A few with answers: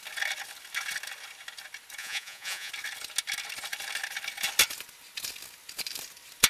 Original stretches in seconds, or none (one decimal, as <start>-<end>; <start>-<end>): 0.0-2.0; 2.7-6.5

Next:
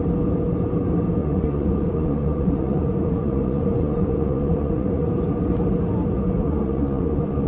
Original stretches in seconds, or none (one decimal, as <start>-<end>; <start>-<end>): 0.0-1.2; 5.1-6.4

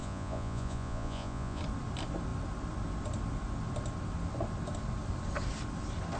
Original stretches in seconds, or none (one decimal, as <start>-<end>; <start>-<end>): 1.6-6.2